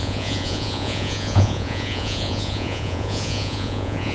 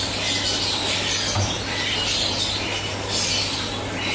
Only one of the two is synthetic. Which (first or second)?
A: first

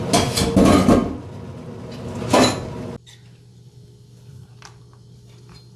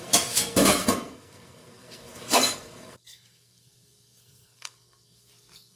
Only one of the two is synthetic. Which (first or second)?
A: second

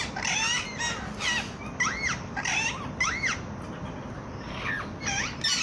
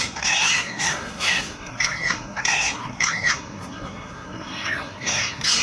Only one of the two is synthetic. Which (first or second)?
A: second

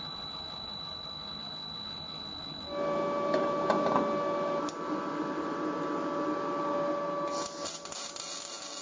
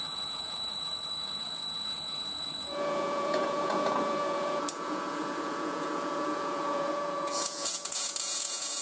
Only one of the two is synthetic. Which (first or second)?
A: second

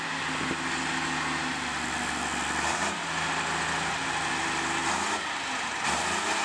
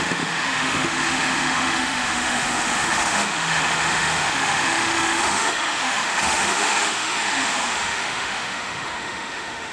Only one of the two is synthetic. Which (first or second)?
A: second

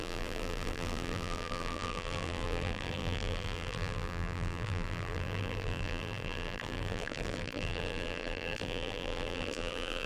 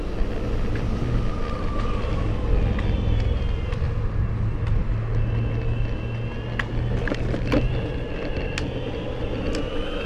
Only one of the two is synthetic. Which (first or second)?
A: first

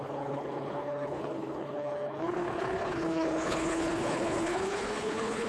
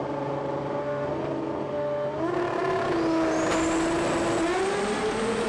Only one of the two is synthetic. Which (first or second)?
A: first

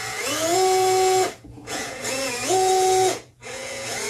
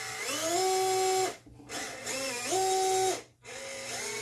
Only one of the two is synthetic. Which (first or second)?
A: first